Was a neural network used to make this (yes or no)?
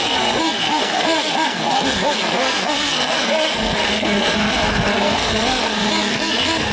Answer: yes